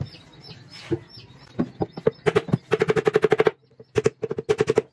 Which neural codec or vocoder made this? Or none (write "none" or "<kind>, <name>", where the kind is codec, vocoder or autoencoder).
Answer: none